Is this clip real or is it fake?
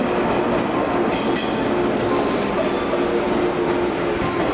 real